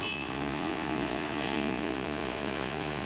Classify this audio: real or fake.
fake